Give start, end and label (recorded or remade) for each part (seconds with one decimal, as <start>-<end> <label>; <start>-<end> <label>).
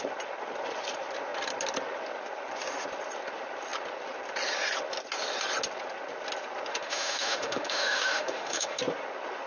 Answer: 0.0-6.7 recorded; 6.7-8.8 remade; 8.8-9.5 recorded